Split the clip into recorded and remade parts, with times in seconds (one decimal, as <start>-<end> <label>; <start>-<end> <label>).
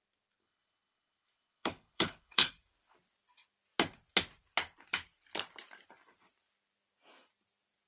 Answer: 0.0-0.4 recorded; 0.4-2.5 remade; 2.5-7.9 recorded